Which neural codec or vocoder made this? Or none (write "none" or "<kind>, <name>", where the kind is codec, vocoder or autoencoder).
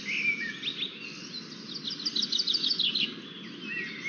none